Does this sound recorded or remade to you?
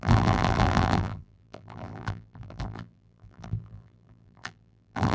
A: remade